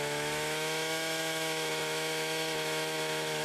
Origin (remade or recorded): remade